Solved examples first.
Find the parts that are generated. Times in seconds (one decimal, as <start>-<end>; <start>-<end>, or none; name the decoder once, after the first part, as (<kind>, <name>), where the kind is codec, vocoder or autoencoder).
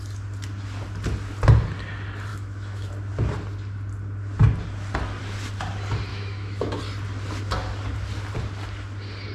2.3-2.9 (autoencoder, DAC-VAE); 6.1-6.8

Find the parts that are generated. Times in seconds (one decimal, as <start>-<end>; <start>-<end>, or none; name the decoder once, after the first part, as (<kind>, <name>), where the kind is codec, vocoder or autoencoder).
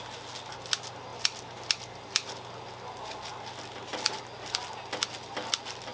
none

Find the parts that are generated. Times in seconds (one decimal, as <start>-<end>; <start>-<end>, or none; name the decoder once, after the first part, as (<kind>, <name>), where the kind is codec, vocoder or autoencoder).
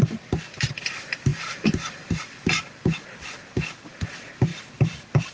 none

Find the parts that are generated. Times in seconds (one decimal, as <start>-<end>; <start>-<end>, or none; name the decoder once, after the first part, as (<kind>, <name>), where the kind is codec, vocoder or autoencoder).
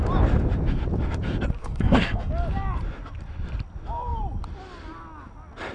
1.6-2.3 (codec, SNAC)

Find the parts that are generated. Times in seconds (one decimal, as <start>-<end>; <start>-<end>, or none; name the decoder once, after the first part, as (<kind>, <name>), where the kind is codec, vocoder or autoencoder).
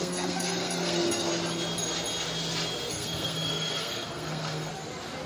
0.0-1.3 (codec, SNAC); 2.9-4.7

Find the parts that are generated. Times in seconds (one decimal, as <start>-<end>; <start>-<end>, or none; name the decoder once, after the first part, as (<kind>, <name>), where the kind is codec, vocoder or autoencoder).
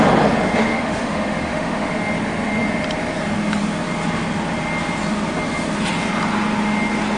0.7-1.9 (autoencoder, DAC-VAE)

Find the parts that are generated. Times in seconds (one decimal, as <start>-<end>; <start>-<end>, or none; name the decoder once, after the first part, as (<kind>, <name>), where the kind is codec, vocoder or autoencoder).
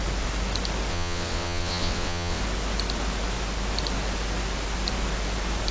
0.9-2.4 (vocoder, WaveNeXt)